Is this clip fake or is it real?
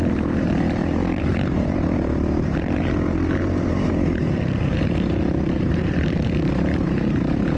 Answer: fake